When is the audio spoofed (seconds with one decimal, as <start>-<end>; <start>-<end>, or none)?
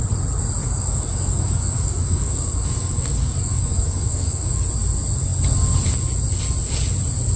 0.6-4.6